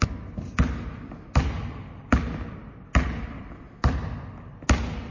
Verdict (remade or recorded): recorded